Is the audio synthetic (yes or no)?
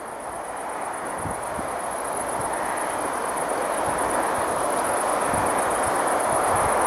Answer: no